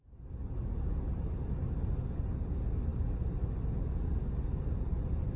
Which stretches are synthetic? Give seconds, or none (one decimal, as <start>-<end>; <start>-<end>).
none